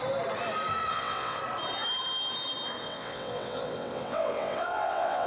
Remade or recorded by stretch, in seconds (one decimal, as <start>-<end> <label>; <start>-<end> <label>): 0.0-0.9 recorded; 0.9-1.4 remade; 1.4-2.8 recorded; 2.8-5.3 remade